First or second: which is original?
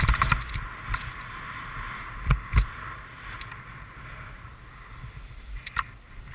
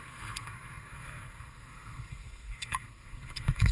first